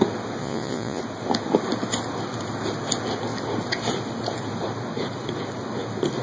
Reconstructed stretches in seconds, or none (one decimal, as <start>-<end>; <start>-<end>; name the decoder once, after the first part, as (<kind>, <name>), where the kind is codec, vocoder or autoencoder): 0.4-1.0 (vocoder, Vocos)